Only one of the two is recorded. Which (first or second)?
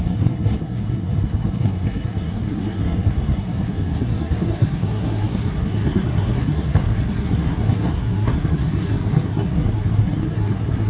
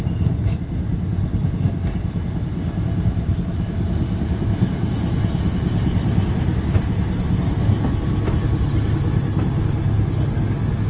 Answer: second